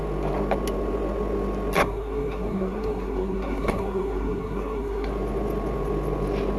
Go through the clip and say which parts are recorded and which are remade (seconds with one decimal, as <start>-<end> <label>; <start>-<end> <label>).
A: 0.0-1.8 recorded; 1.8-5.1 remade; 5.1-6.6 recorded